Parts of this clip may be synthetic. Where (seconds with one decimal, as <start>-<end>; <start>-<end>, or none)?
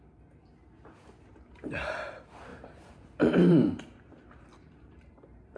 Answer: 1.3-2.0; 2.5-5.6